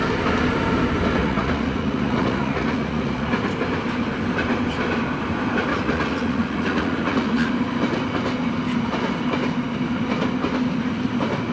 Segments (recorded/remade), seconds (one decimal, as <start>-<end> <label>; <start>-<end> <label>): 0.0-1.2 recorded; 1.2-3.3 remade; 3.3-5.7 recorded; 5.7-7.5 remade; 7.5-11.5 recorded

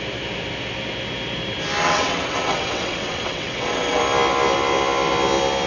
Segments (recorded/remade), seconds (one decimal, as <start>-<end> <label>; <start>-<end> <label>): 0.0-1.8 recorded; 1.8-4.0 remade; 4.0-5.7 recorded

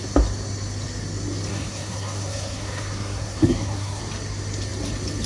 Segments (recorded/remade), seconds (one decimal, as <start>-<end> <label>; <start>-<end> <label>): 0.0-1.5 recorded; 1.5-4.0 remade; 4.0-5.3 recorded

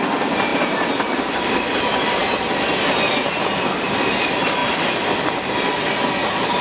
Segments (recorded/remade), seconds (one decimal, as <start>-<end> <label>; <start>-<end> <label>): 0.0-6.6 recorded

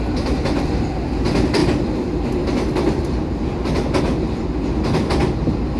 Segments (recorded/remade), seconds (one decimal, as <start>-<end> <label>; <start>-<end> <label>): 0.0-5.8 recorded